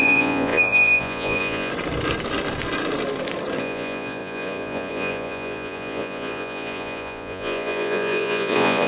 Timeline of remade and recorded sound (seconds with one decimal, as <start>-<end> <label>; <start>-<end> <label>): 0.0-1.7 remade; 1.7-3.6 recorded; 3.6-8.9 remade